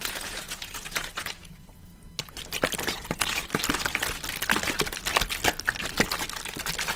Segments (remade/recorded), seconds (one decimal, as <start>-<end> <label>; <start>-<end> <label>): 0.0-1.9 remade; 1.9-2.8 recorded; 2.8-3.4 remade; 3.4-7.0 recorded